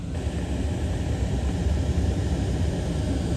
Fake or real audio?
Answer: real